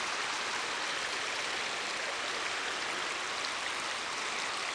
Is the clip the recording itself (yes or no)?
yes